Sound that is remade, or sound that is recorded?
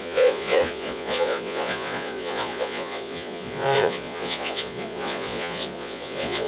remade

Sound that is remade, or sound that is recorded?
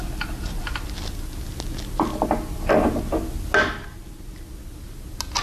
recorded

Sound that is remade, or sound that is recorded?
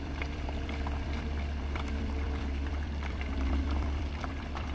remade